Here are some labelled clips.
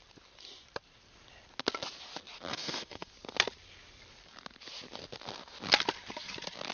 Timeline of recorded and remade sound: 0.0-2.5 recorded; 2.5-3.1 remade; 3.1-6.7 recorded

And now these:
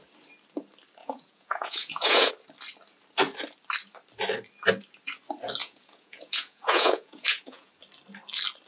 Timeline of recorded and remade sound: 0.0-1.0 recorded; 1.0-2.3 remade; 2.3-5.6 recorded; 5.6-7.7 remade; 7.7-8.7 recorded

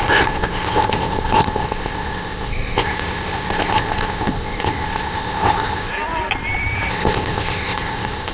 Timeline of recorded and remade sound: 0.0-5.9 remade; 5.9-6.9 recorded; 6.9-8.3 remade

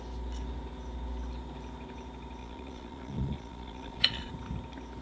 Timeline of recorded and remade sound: 0.0-2.4 recorded; 2.4-4.3 remade; 4.3-5.0 recorded